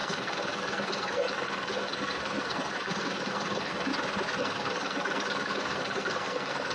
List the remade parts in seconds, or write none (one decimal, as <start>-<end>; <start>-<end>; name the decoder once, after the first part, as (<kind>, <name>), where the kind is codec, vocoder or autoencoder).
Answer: 0.0-3.9 (codec, SNAC); 4.4-6.7